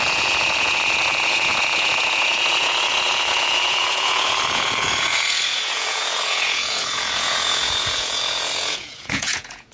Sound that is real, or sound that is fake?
fake